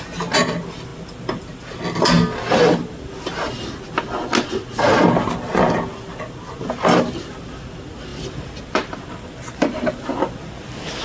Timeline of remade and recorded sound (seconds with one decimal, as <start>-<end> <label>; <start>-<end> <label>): 0.0-11.0 recorded